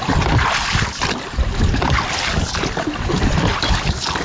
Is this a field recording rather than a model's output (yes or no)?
yes